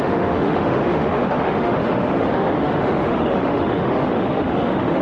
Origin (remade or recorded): remade